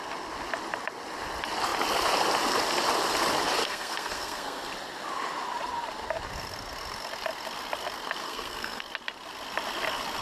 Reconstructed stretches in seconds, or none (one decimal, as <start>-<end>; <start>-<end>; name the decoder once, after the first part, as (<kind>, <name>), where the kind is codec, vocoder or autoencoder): 3.6-4.7 (codec, SNAC); 8.2-8.8